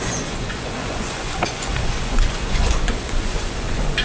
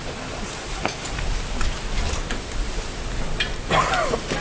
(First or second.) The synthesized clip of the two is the first